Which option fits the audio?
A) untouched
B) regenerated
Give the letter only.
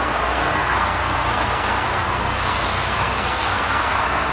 B